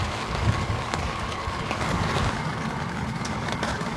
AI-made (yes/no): yes